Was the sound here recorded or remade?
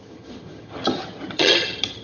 remade